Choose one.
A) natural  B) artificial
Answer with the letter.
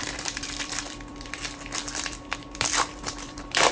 B